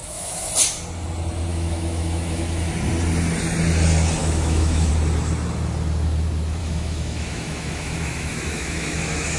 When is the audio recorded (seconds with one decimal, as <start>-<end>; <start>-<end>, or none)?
0.5-1.5; 2.7-4.2; 4.9-6.6

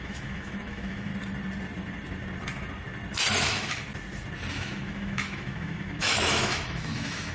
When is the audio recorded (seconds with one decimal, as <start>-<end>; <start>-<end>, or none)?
1.1-3.4; 3.8-4.5

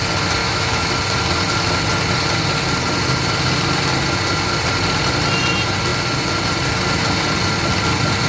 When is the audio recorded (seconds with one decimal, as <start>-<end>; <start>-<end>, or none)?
0.0-0.4; 0.9-8.3